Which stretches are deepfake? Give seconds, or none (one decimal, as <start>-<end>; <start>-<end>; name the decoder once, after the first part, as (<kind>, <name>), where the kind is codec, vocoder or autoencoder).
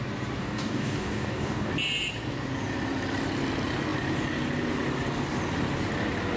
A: 0.4-1.7 (codec, DAC)